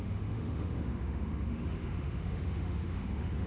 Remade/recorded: remade